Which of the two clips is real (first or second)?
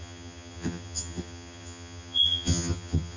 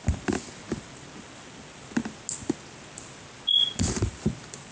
second